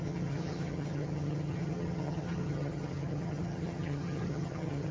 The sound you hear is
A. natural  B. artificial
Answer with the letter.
B